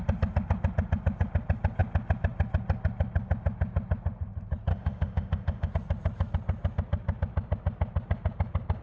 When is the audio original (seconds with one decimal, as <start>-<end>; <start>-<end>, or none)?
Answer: 0.0-4.7; 5.7-8.8